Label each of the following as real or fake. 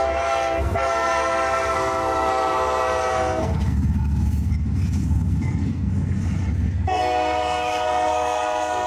fake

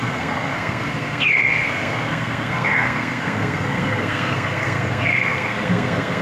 fake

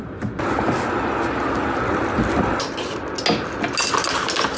real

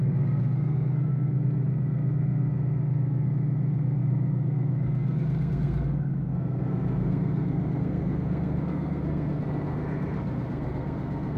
fake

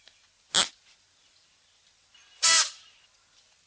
real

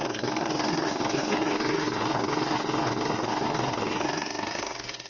fake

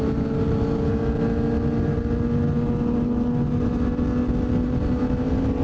real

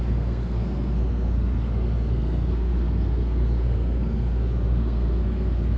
fake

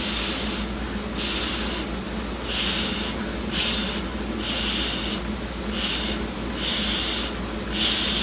real